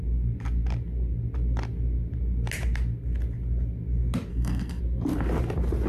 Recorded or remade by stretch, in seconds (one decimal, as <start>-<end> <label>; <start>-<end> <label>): 0.0-4.3 recorded; 4.3-4.8 remade; 4.8-5.9 recorded